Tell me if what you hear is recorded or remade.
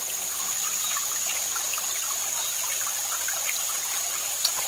recorded